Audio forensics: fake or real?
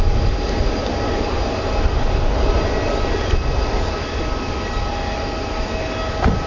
real